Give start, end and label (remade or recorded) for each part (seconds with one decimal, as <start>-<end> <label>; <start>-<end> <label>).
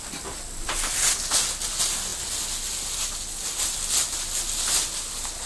0.0-5.5 recorded